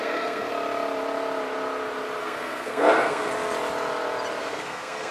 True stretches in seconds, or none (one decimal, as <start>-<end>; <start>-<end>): 0.5-2.2; 3.3-4.4